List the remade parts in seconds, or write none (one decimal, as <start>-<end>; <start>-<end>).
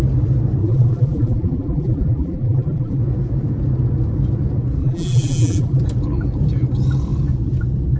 0.6-3.0; 4.8-5.8